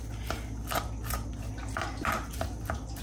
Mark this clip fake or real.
real